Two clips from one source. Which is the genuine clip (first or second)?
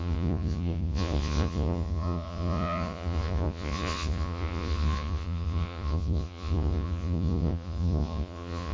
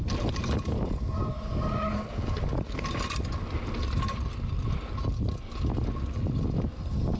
second